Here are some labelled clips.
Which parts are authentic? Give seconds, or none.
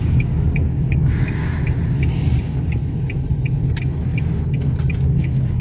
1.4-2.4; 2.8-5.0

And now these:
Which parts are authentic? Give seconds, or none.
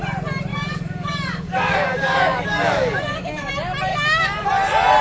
0.0-0.5; 3.5-3.9; 4.5-5.0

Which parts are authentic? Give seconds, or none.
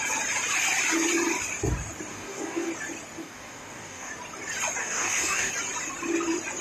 0.0-2.1; 2.7-3.2; 4.1-4.8; 5.5-6.6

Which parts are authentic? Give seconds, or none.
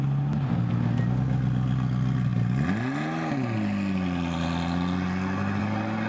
0.0-6.1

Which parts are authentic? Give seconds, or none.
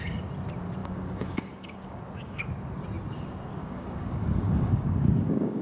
0.0-0.8; 2.5-3.6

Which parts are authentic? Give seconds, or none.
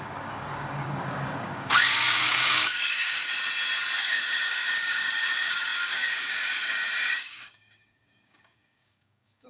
3.3-4.0